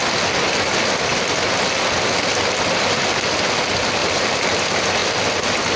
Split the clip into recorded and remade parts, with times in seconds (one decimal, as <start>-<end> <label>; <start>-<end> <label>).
0.0-4.0 recorded; 4.0-4.5 remade; 4.5-5.8 recorded